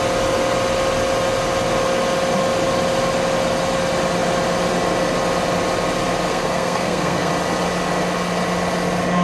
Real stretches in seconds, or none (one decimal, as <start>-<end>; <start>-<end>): 0.0-6.3; 7.3-9.2